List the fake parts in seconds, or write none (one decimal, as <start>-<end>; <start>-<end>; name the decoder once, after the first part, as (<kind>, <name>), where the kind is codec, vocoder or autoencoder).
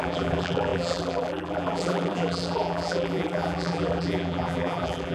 0.0-5.1 (vocoder, BigVGAN v2)